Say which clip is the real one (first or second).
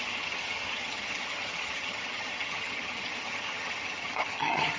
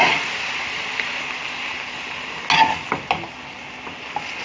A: second